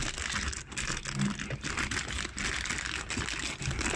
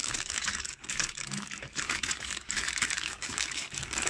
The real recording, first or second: first